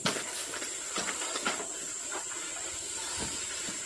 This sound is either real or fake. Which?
real